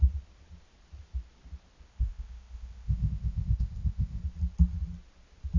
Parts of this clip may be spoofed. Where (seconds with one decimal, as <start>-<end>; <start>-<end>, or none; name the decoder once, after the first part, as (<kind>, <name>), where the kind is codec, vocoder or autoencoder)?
1.9-4.2 (codec, ZipCodec)